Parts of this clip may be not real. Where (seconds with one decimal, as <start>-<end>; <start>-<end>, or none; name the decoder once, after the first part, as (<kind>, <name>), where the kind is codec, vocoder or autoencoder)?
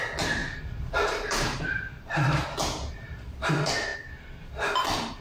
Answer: 0.4-3.5 (vocoder, BigVGAN v2)